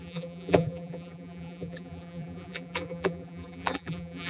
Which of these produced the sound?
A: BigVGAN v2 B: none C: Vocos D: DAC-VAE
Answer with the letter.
A